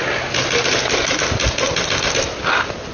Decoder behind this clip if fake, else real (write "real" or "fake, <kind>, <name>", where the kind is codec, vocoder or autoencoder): real